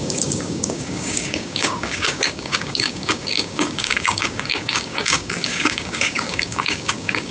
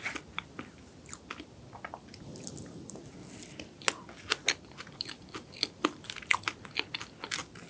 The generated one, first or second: first